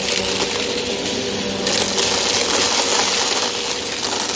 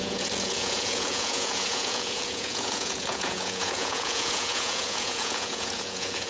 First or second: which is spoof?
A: second